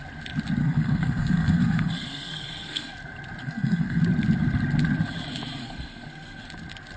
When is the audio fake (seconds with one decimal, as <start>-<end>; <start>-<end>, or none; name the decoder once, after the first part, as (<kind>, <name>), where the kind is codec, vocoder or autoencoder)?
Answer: 0.6-2.9 (codec, SNAC); 3.4-4.0; 5.6-6.4